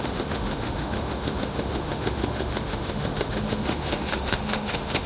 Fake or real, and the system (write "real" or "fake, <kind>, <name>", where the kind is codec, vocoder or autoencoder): fake, autoencoder, DAC-VAE